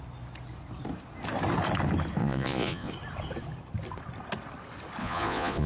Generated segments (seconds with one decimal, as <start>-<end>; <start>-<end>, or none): 2.2-2.9; 5.0-5.7

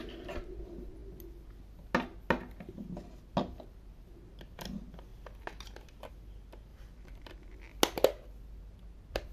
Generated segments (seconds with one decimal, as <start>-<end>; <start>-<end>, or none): 6.7-7.6

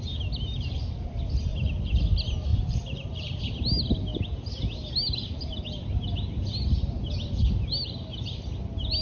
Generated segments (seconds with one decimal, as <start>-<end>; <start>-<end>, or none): 1.5-2.0; 2.5-3.4

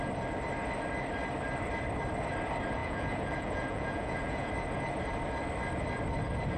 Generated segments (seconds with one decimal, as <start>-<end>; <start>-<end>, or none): 2.8-4.5

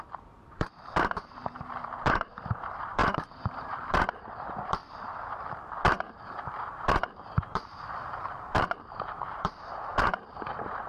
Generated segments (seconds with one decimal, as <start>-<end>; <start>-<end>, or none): 0.0-4.8; 6.1-10.9

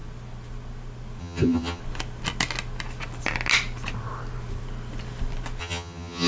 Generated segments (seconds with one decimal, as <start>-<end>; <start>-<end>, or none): 1.2-1.8; 5.6-6.3

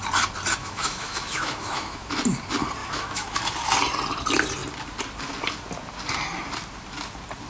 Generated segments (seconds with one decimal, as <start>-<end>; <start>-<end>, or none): 0.6-2.1; 2.8-3.4

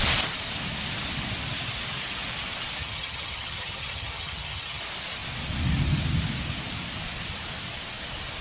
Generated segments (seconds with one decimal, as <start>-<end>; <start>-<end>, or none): 2.8-4.8